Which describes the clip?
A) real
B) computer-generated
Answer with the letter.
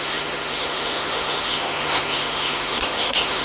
B